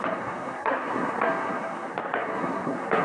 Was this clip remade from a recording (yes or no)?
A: yes